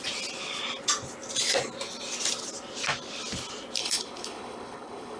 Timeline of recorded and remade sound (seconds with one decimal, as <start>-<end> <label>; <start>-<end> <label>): 0.0-3.8 recorded; 3.8-5.2 remade